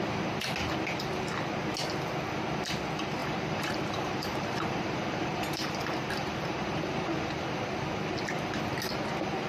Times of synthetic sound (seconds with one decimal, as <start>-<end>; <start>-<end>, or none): 3.2-7.6